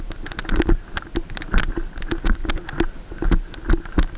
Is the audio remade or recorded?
recorded